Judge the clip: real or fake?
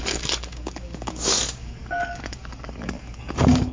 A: fake